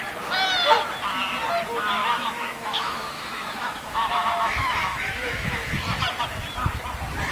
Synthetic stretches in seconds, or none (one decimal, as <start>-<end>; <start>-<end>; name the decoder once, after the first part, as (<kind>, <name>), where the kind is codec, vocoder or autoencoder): 2.0-5.8 (autoencoder, DAC-VAE)

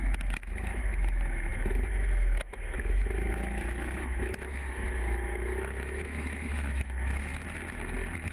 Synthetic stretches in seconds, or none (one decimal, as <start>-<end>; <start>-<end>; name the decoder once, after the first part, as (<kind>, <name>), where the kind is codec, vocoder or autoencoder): 0.0-7.3 (autoencoder, DAC-VAE)

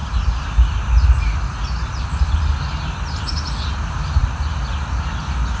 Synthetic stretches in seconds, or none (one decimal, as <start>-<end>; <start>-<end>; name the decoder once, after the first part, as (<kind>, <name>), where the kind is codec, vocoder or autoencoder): none

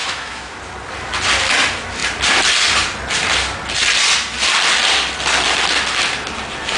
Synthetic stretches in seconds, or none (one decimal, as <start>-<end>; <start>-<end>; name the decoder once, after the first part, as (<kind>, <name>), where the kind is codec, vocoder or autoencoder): 0.0-0.6 (autoencoder, DAC-VAE)

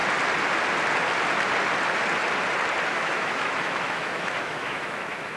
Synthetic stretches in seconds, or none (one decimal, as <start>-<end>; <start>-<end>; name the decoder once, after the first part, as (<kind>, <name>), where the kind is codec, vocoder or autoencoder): 2.9-5.4 (autoencoder, DAC-VAE)